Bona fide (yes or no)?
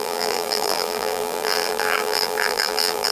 no